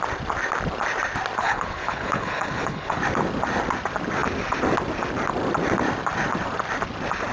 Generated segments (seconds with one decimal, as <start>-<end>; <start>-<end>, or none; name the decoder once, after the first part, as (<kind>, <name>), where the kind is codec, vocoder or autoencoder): 1.4-3.0 (codec, HILCodec)